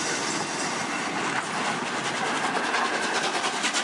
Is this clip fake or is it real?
real